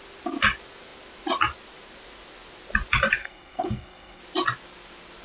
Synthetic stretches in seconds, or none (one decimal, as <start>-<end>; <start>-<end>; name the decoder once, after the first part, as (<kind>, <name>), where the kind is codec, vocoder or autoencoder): 3.2-4.2 (codec, SNAC)